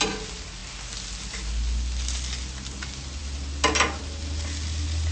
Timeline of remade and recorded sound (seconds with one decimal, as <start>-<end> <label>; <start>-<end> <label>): 0.0-5.1 recorded